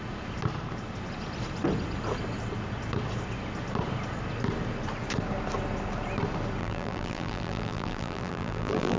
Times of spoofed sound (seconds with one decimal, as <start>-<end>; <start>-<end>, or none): 6.6-9.0